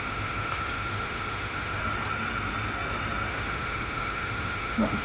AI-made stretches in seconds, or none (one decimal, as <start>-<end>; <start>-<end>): 0.0-1.8; 3.3-5.0